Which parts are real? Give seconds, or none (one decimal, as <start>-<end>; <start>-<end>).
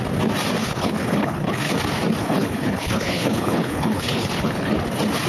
0.0-0.6; 1.7-2.2; 4.7-5.3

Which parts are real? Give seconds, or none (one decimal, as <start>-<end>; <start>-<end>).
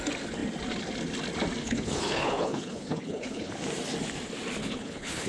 0.0-1.6; 3.5-4.6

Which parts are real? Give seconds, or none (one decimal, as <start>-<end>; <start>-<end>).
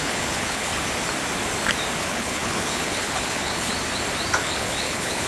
0.7-2.0; 3.7-4.4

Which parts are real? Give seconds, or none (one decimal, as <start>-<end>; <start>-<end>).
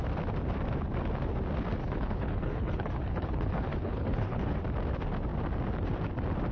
0.0-1.8; 4.6-6.5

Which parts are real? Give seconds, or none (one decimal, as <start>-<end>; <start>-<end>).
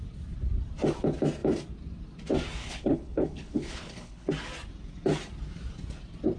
0.0-2.6; 4.3-6.4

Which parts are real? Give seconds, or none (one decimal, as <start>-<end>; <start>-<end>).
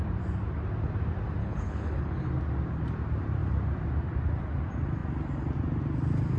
0.0-1.4; 2.3-6.4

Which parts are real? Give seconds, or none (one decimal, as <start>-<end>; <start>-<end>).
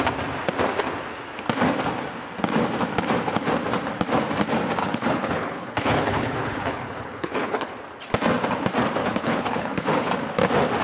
0.0-4.8; 7.7-9.0; 10.1-10.8